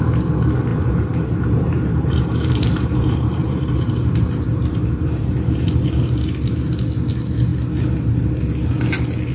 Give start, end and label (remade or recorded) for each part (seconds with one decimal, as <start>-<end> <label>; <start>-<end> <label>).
0.0-0.7 recorded; 0.7-5.7 remade; 5.7-9.3 recorded